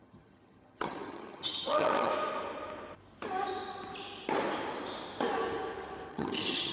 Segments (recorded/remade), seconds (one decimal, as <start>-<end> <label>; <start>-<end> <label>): 0.0-2.1 remade; 2.1-6.1 recorded; 6.1-6.7 remade